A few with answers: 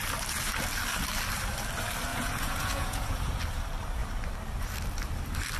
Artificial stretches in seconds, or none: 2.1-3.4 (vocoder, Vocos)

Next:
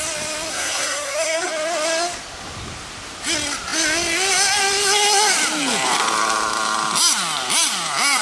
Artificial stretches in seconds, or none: 0.5-1.5 (codec, SNAC)

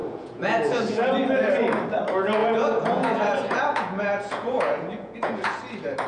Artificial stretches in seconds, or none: 0.0-1.1 (vocoder, Vocos); 2.4-5.6